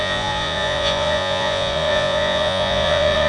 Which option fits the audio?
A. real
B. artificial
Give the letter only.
B